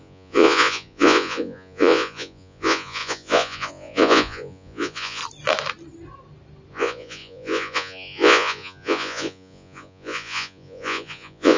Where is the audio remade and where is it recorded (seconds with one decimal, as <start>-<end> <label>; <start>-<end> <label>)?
0.0-5.2 remade; 5.2-6.7 recorded; 6.7-11.6 remade